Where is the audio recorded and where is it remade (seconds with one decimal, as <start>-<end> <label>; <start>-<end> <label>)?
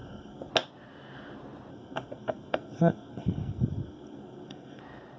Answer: 0.0-0.5 remade; 0.5-1.7 recorded; 1.7-4.8 remade; 4.8-5.2 recorded